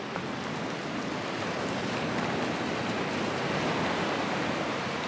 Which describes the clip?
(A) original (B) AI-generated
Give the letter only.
A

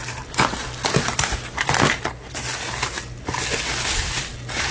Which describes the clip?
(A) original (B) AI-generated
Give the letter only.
A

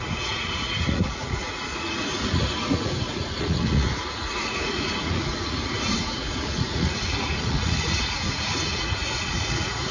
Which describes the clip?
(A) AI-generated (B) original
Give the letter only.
A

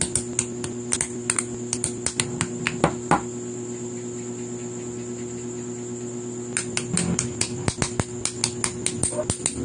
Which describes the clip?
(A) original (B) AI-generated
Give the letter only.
A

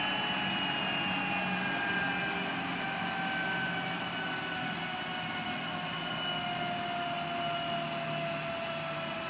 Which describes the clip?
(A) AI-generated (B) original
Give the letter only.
B